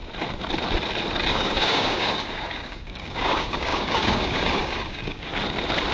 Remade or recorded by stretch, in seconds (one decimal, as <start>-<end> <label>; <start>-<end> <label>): 0.0-1.3 recorded; 1.3-5.3 remade; 5.3-5.9 recorded